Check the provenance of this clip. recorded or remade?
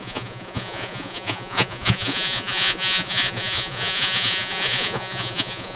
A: remade